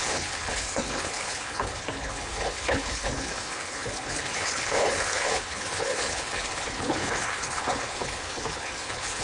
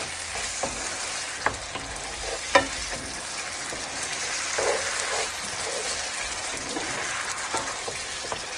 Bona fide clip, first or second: second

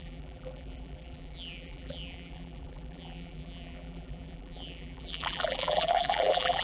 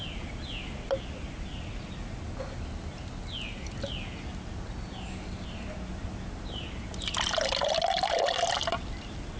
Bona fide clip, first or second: second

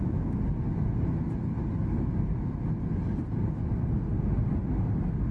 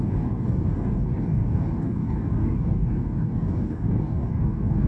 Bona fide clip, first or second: first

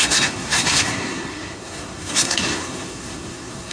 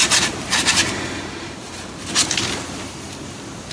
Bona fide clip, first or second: second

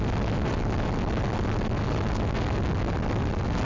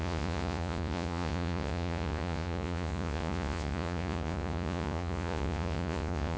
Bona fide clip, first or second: first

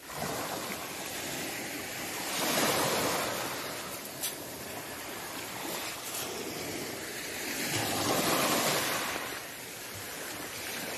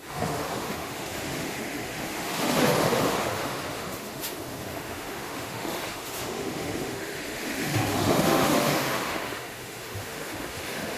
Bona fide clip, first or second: first